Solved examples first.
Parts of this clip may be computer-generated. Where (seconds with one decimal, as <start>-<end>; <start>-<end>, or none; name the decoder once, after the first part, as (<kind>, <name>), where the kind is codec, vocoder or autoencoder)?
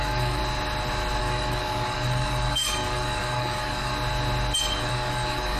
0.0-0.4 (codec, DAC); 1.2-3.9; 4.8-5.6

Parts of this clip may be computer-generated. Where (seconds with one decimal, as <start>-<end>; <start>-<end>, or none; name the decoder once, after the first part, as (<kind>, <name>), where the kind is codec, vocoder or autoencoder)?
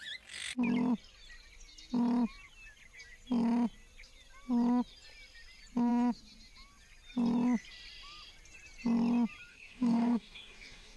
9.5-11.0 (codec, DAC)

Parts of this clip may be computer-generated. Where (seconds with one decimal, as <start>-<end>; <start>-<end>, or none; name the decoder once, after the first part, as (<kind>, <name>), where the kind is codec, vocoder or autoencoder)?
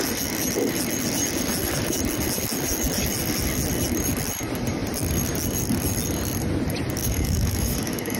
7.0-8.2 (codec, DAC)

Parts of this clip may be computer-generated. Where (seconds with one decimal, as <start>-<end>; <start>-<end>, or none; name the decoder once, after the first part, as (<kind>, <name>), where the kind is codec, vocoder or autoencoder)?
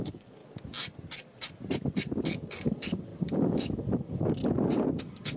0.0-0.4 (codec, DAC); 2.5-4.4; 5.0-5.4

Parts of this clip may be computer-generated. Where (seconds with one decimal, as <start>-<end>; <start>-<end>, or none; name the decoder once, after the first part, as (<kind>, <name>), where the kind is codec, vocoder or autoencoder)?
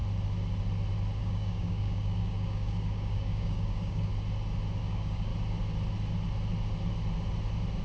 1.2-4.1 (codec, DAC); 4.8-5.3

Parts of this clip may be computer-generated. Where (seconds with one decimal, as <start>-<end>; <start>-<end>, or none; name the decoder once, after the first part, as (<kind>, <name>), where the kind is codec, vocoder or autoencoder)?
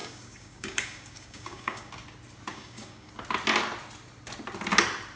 0.0-1.9 (codec, DAC); 2.5-3.1